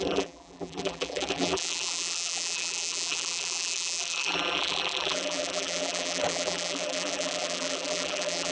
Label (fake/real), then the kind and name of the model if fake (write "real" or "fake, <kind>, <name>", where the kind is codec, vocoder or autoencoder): fake, vocoder, BigVGAN v2